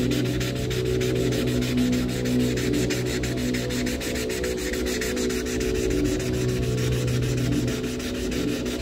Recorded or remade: recorded